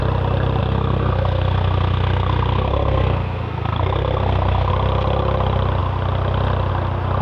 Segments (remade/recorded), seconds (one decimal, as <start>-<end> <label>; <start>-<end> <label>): 0.0-0.6 recorded; 0.6-4.7 remade; 4.7-7.2 recorded